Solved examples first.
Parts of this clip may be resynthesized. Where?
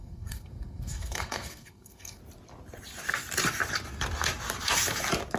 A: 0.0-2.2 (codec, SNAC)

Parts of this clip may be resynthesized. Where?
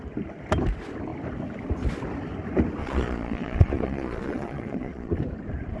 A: 2.8-5.2 (vocoder, Vocos)